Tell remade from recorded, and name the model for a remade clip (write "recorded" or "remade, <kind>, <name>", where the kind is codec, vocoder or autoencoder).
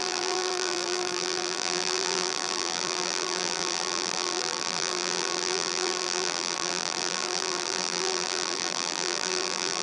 remade, vocoder, BigVGAN v2